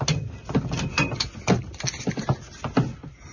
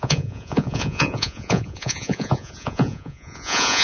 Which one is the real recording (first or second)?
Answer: first